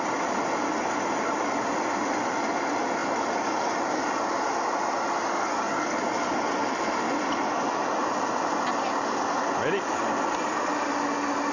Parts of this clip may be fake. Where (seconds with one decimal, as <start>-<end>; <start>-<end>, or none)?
none